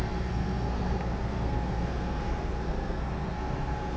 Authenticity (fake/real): fake